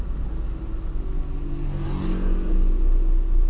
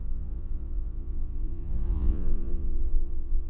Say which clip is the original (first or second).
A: first